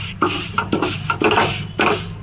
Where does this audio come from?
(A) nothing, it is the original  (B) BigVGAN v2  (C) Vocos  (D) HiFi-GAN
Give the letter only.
A